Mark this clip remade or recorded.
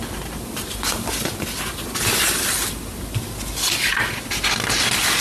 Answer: recorded